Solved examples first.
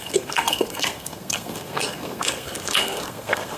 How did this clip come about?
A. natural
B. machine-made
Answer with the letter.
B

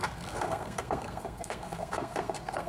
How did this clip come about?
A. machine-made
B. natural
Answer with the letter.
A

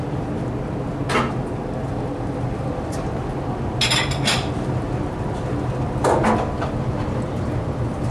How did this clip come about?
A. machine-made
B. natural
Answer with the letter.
B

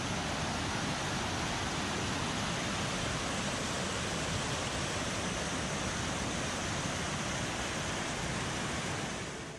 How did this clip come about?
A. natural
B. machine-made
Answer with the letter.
A